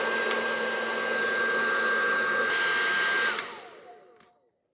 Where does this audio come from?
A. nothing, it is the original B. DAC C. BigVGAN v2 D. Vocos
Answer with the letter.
A